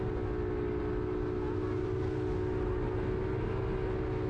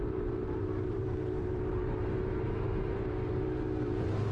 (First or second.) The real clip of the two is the first